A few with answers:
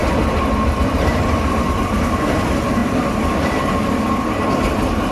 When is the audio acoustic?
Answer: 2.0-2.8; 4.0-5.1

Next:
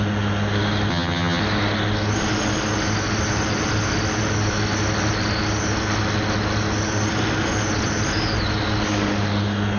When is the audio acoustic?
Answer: 0.0-0.9; 1.4-9.8